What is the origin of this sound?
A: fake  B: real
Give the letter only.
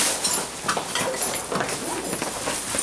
B